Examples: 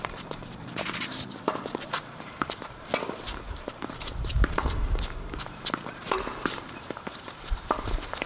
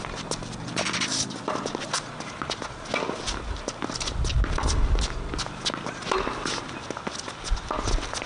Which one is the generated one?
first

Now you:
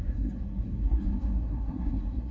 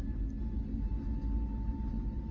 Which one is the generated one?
first